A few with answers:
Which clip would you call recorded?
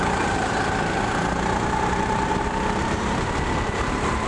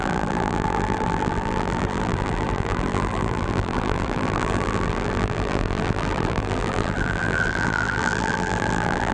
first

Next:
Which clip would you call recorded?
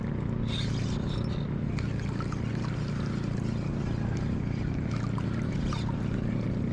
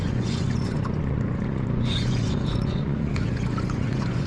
first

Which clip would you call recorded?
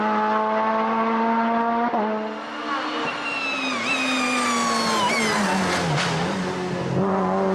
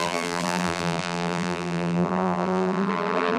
first